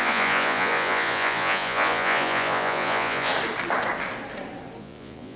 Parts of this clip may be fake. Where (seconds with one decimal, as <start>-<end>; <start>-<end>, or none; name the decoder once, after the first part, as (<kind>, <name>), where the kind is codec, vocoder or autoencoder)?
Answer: 0.0-3.3 (vocoder, Vocos); 4.8-5.4